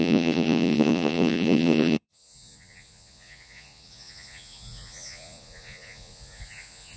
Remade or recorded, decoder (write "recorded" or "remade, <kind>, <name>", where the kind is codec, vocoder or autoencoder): remade, vocoder, Vocos